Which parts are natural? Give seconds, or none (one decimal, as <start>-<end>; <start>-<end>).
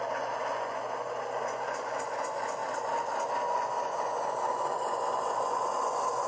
2.6-3.3